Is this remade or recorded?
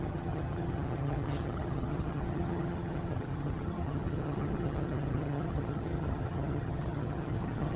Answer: remade